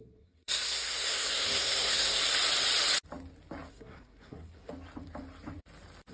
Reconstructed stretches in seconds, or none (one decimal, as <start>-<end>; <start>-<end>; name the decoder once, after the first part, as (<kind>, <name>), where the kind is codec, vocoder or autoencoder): 0.0-2.2 (codec, SNAC); 3.7-4.7